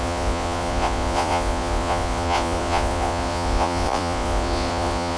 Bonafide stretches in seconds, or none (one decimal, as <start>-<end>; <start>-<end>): none